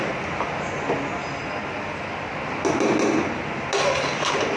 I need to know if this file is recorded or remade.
recorded